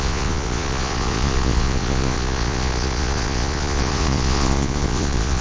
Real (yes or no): no